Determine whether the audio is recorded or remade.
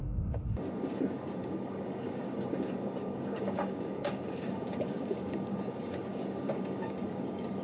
remade